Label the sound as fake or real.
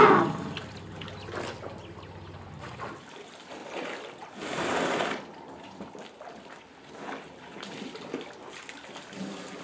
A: real